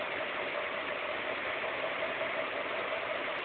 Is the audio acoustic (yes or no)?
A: yes